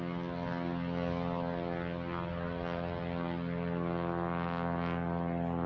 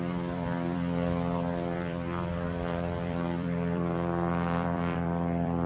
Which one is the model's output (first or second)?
second